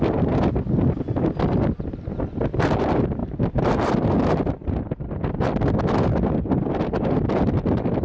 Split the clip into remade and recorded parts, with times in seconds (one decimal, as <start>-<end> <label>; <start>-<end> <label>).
0.0-3.2 recorded; 3.2-3.9 remade; 3.9-8.0 recorded